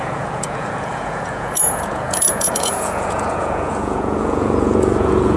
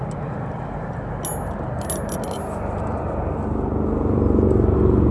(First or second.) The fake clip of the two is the first